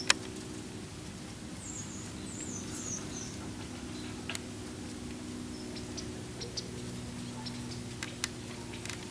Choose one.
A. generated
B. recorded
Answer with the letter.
B